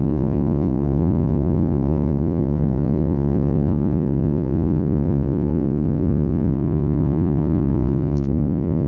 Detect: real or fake fake